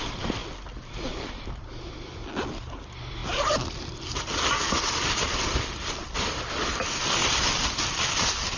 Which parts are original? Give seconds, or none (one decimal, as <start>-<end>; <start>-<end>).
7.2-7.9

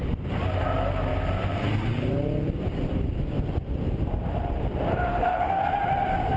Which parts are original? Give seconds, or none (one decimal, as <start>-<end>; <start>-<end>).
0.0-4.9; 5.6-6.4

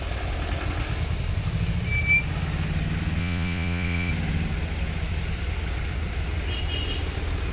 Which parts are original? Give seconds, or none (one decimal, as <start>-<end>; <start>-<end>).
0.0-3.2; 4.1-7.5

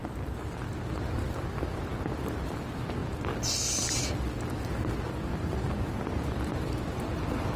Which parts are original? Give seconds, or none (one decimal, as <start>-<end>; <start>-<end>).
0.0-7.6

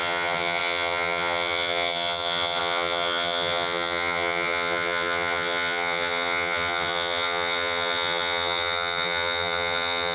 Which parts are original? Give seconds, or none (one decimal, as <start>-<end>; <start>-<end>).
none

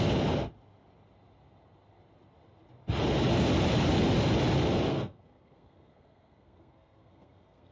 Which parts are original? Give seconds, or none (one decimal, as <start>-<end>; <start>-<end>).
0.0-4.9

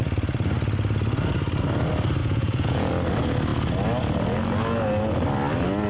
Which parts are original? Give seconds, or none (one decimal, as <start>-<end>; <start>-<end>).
0.0-2.2; 2.9-5.9

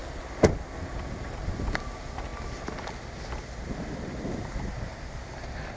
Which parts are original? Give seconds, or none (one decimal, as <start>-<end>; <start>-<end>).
0.0-5.8